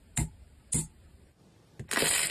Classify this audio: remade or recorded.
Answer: recorded